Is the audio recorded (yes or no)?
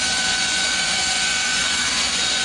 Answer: no